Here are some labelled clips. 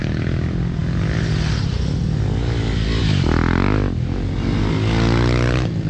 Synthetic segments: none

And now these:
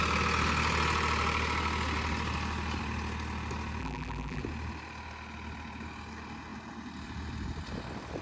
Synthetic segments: 3.8-4.4 (vocoder, BigVGAN v2)

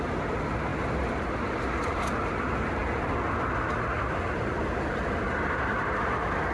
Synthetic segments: none

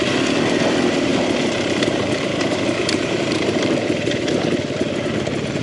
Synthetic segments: 1.1-4.5 (vocoder, BigVGAN v2)

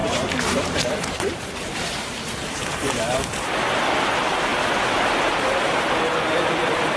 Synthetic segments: 0.0-3.0 (vocoder, BigVGAN v2)

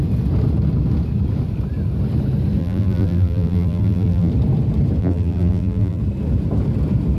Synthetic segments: 2.6-4.3 (vocoder, BigVGAN v2); 5.0-6.0